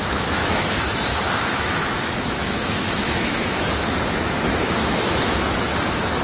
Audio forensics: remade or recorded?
remade